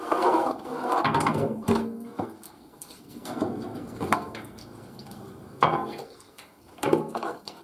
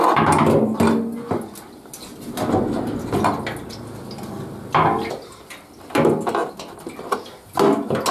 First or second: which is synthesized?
first